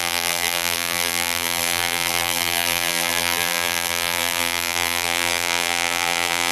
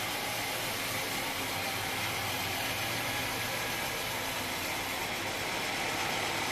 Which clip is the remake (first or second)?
first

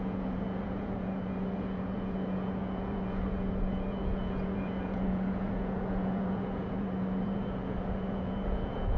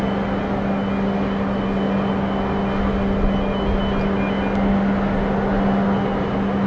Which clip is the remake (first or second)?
first